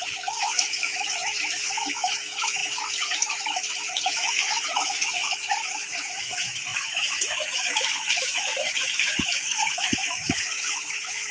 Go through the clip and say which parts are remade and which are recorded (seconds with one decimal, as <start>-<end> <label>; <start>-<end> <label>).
0.0-11.3 remade